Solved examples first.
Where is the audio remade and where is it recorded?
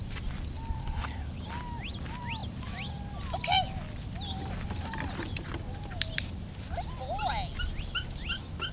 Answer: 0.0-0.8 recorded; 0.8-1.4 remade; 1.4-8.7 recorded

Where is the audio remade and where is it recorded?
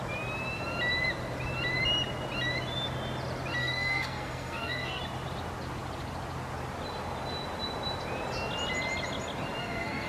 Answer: 0.0-3.6 recorded; 3.6-5.0 remade; 5.0-9.6 recorded; 9.6-10.1 remade